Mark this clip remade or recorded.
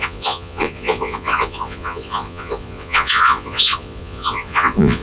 remade